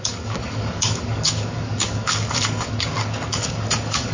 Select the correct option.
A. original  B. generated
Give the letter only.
B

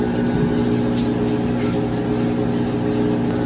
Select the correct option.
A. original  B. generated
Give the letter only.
A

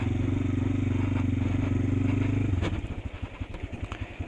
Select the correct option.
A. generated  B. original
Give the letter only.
B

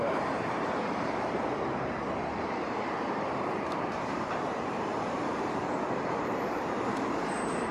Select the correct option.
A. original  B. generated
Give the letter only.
B